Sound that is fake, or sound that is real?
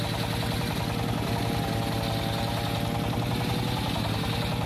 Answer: real